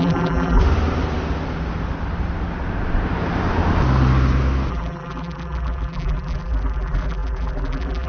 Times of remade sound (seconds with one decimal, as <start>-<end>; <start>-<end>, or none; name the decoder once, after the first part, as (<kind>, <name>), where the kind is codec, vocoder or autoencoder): 0.0-0.6 (vocoder, BigVGAN v2); 4.7-8.1